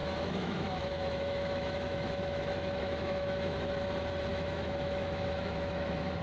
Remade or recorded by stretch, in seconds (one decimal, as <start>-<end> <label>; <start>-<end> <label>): 0.0-3.7 remade; 3.7-4.3 recorded; 4.3-6.2 remade